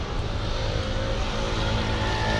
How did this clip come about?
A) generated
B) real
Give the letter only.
B